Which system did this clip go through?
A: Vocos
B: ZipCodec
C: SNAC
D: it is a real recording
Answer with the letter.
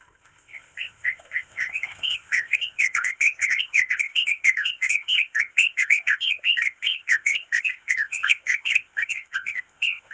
B